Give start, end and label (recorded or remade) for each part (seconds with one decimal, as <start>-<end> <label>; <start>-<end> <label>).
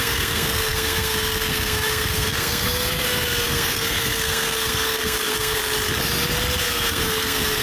0.0-5.6 remade; 5.6-6.6 recorded; 6.6-7.6 remade